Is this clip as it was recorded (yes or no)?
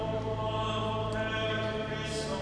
yes